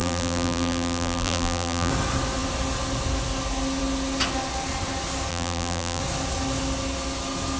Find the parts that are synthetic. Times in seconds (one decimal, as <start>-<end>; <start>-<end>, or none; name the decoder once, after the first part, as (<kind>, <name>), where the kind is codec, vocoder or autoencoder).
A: 0.0-1.9 (vocoder, BigVGAN v2); 5.3-6.0